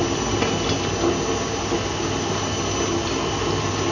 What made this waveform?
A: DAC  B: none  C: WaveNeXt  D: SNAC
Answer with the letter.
B